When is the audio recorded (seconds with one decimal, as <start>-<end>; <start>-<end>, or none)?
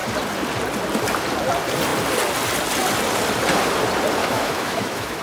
0.0-4.2